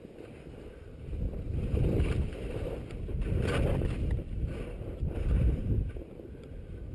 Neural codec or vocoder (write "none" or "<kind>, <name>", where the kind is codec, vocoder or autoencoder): none